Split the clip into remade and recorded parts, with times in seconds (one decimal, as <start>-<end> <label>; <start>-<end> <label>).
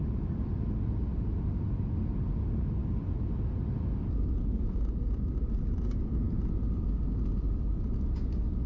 0.0-8.7 recorded